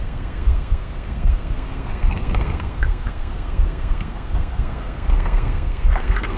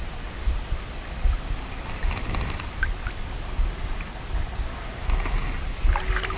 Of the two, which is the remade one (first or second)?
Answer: first